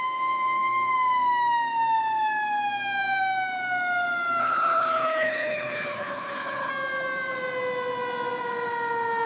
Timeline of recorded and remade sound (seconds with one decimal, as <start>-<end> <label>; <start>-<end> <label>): 0.0-4.4 recorded; 4.4-6.7 remade; 6.7-9.3 recorded